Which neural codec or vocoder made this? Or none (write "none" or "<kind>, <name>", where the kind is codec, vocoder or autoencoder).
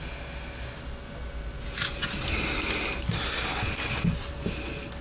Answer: none